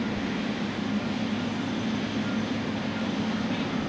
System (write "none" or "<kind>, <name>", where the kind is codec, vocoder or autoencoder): none